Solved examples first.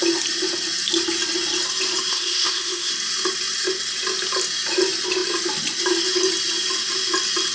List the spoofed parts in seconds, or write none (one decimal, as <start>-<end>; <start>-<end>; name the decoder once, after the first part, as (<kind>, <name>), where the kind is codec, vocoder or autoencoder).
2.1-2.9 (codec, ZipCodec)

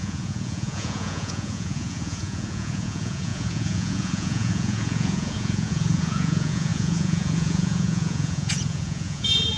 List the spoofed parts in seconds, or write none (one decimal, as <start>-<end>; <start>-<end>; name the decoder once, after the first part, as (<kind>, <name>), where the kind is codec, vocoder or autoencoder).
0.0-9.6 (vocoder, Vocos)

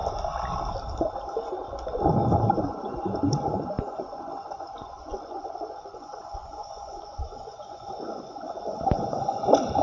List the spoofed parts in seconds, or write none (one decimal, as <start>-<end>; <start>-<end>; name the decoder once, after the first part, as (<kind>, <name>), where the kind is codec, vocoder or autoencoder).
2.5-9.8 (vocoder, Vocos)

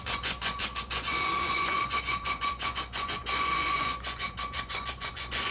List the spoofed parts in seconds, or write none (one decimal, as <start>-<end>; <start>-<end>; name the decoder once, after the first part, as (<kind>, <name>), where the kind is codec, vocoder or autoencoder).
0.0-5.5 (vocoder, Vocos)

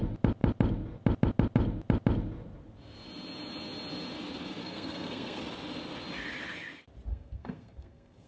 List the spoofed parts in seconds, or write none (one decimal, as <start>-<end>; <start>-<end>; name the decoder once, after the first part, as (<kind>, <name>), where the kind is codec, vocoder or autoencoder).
4.6-5.4 (codec, SNAC); 7.1-8.3

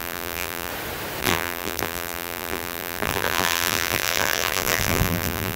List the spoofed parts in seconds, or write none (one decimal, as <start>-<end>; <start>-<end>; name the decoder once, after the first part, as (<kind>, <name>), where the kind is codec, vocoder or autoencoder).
0.0-0.7 (vocoder, BigVGAN v2); 1.2-5.6

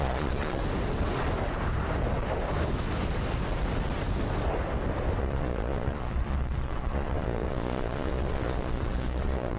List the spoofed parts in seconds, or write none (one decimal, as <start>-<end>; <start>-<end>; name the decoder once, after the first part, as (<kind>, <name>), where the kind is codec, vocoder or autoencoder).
0.0-0.6 (vocoder, Vocos); 5.2-9.6

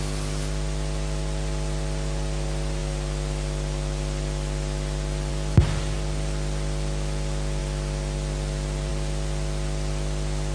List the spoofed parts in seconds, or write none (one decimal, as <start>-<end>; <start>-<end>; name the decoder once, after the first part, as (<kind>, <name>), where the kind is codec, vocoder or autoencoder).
none